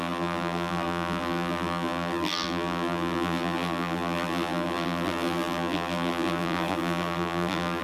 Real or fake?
fake